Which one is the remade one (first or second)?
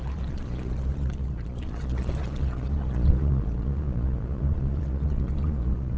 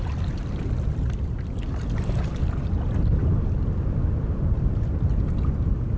first